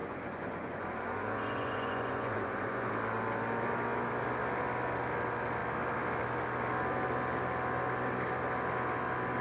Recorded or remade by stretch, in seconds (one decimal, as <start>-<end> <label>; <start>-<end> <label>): 0.0-2.9 remade; 2.9-9.4 recorded